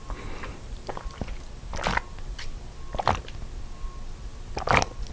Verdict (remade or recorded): recorded